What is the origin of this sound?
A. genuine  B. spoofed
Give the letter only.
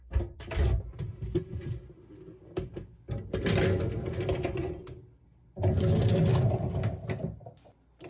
A